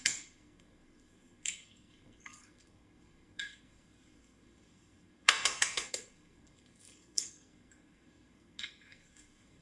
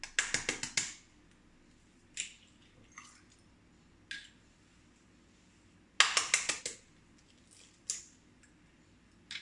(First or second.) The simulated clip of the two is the first